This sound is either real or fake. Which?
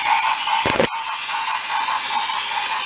fake